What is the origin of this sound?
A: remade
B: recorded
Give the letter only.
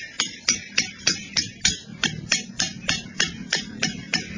A